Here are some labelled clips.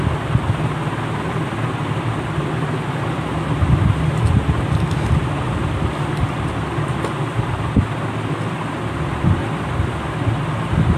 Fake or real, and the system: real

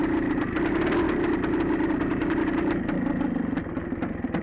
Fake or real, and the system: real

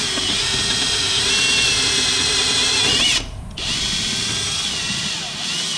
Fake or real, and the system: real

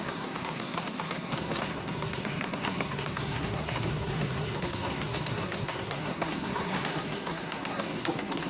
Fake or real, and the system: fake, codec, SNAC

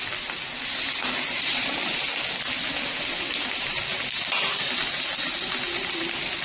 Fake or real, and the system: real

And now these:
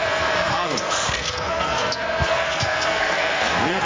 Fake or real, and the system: fake, codec, SNAC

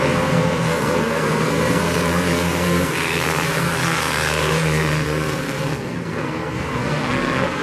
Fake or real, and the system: fake, codec, SNAC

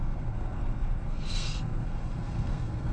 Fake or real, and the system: fake, codec, SNAC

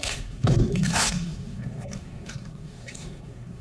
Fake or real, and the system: fake, codec, SNAC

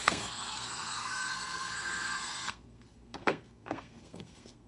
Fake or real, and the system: fake, codec, SNAC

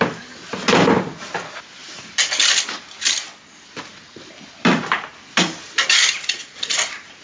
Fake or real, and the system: real